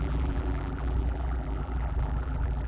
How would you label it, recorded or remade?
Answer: remade